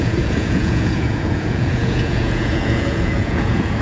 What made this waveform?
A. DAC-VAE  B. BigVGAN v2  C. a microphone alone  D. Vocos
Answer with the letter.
D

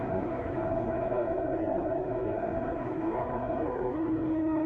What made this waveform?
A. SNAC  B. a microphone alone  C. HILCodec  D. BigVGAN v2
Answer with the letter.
A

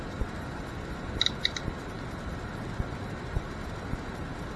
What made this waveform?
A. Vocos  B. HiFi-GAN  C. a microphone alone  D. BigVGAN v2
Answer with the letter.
C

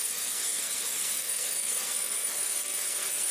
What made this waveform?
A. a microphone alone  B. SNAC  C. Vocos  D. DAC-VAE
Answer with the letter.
B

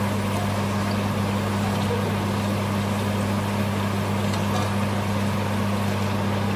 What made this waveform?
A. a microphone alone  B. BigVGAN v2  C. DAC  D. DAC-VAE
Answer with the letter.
A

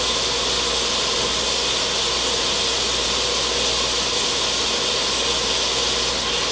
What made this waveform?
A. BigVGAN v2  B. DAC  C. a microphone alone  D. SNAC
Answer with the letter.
C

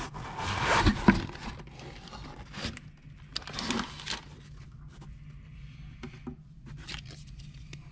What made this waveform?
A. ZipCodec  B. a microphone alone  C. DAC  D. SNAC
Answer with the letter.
B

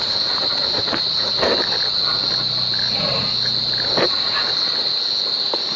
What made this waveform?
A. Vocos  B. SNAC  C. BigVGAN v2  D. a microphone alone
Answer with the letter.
D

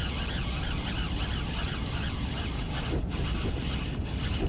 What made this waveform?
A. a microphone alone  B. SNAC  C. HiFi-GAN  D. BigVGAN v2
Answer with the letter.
A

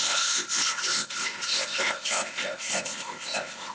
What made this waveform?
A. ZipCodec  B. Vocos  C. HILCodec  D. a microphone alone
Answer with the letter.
A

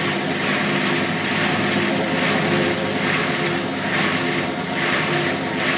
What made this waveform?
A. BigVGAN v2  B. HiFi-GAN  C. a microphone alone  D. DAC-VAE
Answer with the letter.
C